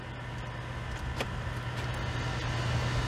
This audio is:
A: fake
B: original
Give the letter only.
B